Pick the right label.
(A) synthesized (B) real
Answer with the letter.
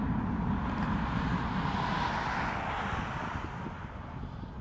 B